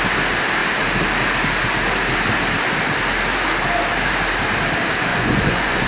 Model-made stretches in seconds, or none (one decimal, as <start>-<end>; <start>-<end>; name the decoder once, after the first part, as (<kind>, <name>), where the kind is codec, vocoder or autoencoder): 5.1-5.9 (vocoder, Vocos)